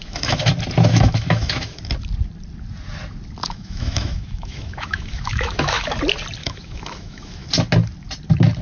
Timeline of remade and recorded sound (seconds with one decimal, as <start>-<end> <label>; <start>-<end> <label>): 0.0-0.5 remade; 0.5-0.9 recorded; 0.9-1.8 remade; 1.8-3.4 recorded; 3.4-6.0 remade; 6.0-6.4 recorded; 6.4-7.5 remade; 7.5-8.6 recorded